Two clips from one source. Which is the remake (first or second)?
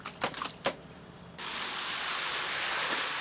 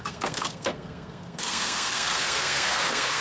second